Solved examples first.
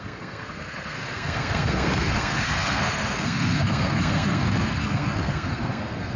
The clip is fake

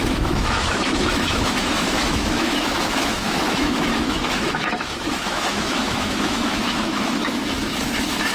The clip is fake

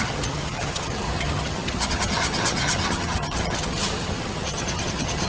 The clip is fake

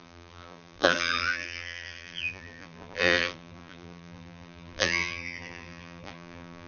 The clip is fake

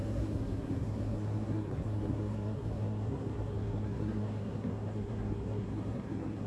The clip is fake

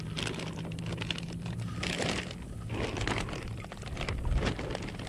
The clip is real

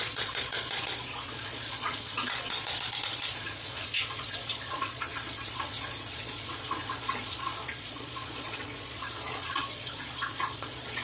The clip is fake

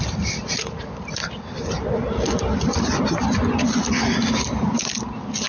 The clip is real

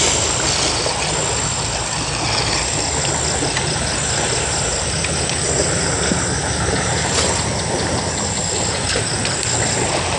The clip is real